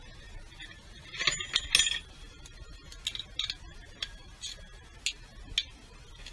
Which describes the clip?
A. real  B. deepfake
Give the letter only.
A